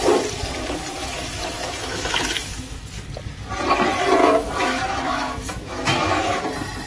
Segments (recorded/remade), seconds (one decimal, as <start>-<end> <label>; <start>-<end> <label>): 0.0-1.0 recorded; 1.0-2.8 remade; 2.8-4.2 recorded; 4.2-6.4 remade; 6.4-6.9 recorded